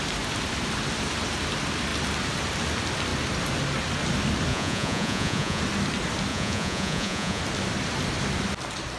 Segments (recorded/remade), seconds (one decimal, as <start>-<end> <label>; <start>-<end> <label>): 0.0-4.5 recorded; 4.5-5.6 remade; 5.6-6.3 recorded; 6.3-7.4 remade; 7.4-9.0 recorded